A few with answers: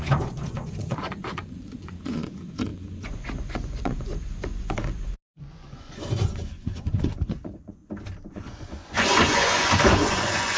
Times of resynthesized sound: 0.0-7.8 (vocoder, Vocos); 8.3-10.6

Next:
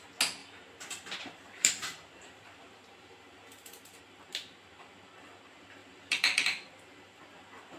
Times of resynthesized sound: 0.4-4.0 (vocoder, BigVGAN v2); 5.8-7.2

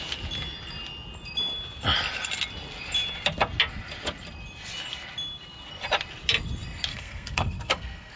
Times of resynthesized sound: 6.9-8.2 (codec, SNAC)